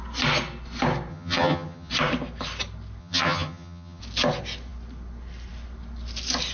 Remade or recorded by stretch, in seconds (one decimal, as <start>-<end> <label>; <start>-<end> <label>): 0.0-1.1 recorded; 1.1-1.9 remade; 1.9-3.0 recorded; 3.0-4.0 remade; 4.0-6.5 recorded